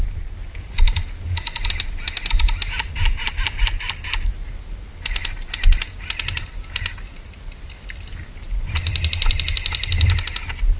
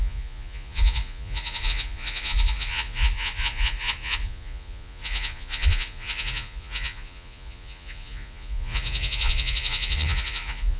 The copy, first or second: second